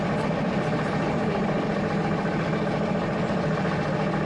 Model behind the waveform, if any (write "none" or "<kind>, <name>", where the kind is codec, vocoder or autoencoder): none